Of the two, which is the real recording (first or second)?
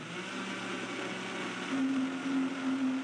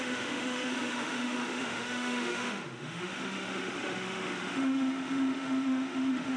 first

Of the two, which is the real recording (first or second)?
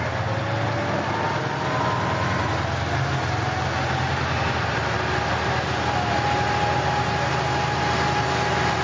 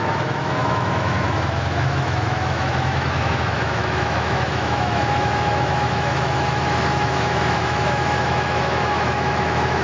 first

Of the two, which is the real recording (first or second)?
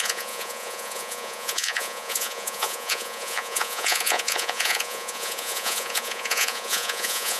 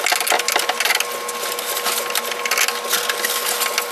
second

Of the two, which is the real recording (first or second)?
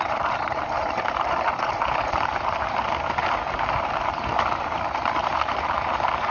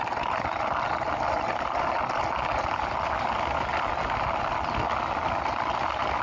second